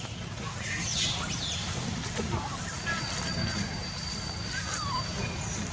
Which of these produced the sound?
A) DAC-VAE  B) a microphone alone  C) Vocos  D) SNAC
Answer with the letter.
B